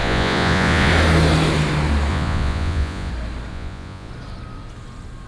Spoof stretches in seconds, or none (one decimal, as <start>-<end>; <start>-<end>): 0.0-0.9; 2.1-3.1; 3.5-4.1